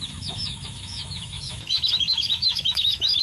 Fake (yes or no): yes